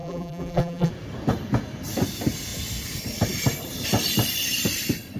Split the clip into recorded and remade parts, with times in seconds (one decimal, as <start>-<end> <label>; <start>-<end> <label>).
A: 0.0-0.9 remade; 0.9-5.2 recorded